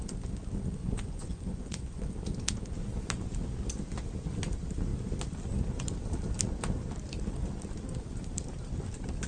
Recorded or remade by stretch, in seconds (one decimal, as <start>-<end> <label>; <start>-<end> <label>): 0.0-0.8 recorded; 0.8-2.0 remade; 2.0-9.3 recorded